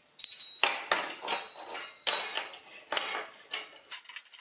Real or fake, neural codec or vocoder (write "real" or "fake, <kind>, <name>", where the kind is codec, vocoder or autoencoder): real